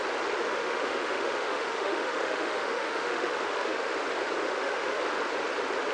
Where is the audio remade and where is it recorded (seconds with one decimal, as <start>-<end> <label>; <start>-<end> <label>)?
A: 0.0-0.4 recorded; 0.4-3.9 remade; 3.9-4.4 recorded; 4.4-5.0 remade; 5.0-5.9 recorded

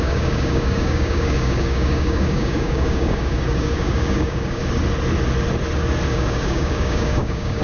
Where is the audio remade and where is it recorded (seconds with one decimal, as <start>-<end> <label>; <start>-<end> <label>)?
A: 0.0-4.6 remade; 4.6-6.1 recorded; 6.1-7.6 remade

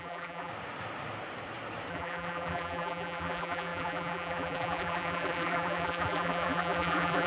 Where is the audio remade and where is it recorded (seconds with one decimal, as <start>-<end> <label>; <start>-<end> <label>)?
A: 0.0-0.5 remade; 0.5-1.9 recorded; 1.9-7.3 remade

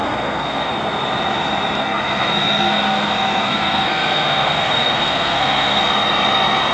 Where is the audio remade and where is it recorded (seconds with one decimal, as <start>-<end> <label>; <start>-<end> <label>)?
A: 0.0-0.7 remade; 0.7-1.8 recorded; 1.8-5.8 remade; 5.8-6.7 recorded

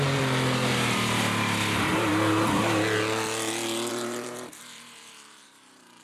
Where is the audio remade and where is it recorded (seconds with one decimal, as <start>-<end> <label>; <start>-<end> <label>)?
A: 0.0-2.1 remade; 2.1-3.9 recorded; 3.9-6.0 remade

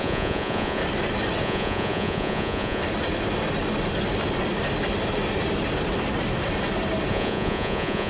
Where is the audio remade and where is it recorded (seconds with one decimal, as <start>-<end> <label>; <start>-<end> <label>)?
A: 0.0-0.8 remade; 0.8-1.4 recorded; 1.4-2.8 remade; 2.8-7.1 recorded; 7.1-8.1 remade